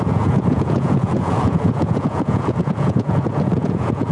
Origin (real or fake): fake